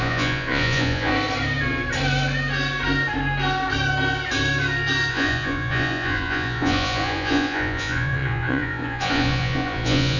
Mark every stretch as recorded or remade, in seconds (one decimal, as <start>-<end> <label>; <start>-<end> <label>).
0.0-1.1 remade; 1.1-5.1 recorded; 5.1-10.2 remade